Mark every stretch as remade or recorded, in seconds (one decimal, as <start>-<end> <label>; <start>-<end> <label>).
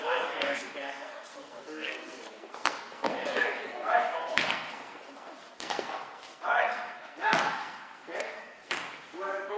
0.0-9.6 remade